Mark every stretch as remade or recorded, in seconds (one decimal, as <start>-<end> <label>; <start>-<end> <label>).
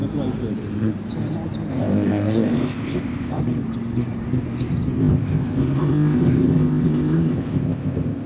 0.0-1.7 recorded; 1.7-3.4 remade; 3.4-5.0 recorded; 5.0-8.3 remade